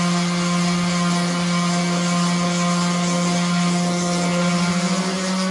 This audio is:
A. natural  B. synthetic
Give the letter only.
A